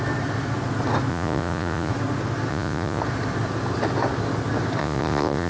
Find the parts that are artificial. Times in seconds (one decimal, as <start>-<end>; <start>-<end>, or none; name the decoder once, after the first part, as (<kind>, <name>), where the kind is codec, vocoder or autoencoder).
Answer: 1.1-1.9 (vocoder, Vocos); 2.5-3.0; 4.8-5.5